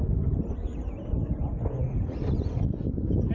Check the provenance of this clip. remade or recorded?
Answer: recorded